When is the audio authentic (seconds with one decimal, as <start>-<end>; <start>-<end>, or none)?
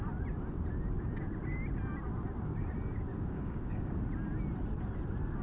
0.0-3.1; 4.0-5.4